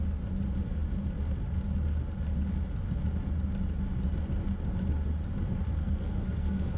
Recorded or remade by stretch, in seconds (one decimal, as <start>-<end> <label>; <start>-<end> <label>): 0.0-5.8 recorded; 5.8-6.8 remade